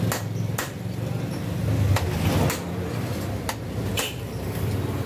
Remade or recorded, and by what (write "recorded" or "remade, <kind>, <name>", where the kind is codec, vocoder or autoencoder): recorded